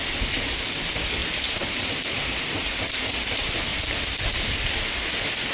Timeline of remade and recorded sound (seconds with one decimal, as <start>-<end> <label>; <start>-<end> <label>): 0.0-1.2 recorded; 1.2-2.9 remade; 2.9-5.5 recorded